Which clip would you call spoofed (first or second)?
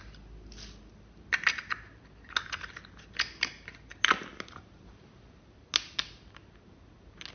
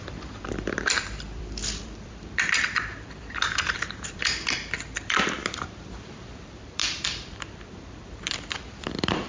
second